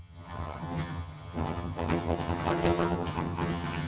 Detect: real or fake fake